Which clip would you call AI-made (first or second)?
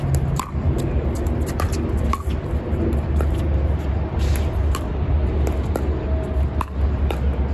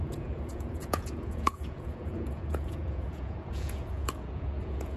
second